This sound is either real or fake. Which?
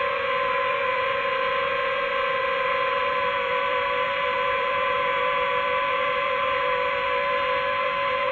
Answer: fake